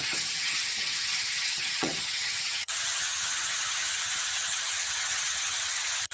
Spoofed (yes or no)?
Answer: yes